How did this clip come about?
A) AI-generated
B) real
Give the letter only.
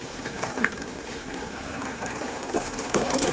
A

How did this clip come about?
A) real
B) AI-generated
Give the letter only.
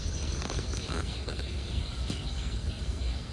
B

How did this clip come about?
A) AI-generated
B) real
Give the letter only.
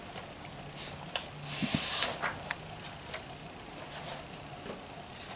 B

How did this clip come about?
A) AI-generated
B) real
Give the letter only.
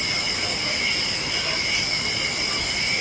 B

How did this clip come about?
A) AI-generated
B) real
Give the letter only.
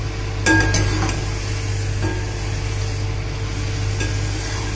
B